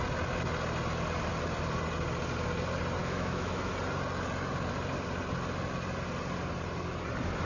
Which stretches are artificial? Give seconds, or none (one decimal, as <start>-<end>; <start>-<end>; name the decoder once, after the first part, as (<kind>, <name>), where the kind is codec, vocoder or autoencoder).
3.0-3.7 (autoencoder, DAC-VAE)